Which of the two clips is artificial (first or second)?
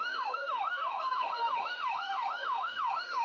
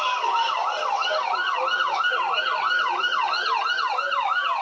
first